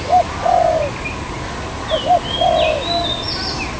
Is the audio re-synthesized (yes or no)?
no